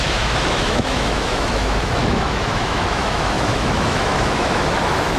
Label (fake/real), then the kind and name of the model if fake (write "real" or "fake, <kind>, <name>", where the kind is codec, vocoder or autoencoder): fake, autoencoder, DAC-VAE